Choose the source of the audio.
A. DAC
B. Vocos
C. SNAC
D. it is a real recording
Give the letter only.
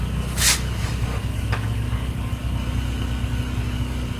A